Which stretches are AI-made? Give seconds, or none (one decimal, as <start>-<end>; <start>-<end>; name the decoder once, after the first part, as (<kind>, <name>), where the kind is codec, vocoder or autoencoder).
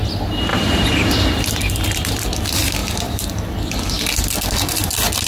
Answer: 0.5-2.4 (vocoder, BigVGAN v2); 2.8-3.9